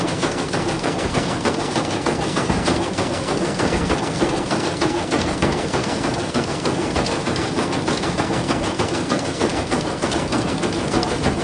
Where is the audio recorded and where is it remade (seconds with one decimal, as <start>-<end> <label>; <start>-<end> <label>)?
0.0-11.4 remade